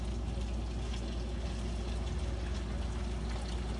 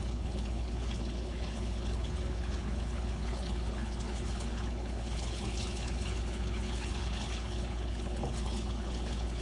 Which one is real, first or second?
first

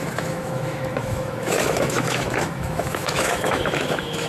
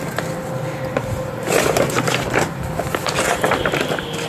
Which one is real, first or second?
second